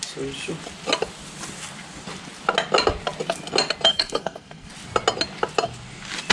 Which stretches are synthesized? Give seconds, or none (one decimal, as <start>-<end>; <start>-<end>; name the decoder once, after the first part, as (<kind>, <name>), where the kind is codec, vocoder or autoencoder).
3.9-4.7 (codec, SNAC)